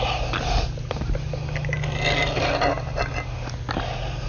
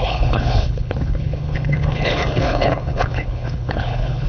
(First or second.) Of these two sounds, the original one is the first